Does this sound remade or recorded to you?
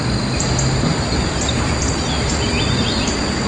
recorded